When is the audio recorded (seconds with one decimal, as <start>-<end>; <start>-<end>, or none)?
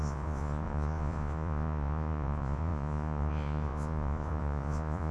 none